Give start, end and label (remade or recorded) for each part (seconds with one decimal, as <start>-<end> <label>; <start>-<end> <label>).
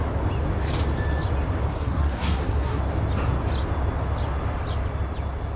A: 0.0-1.7 recorded; 1.7-2.8 remade; 2.8-5.6 recorded